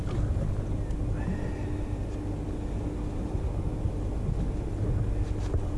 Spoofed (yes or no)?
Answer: no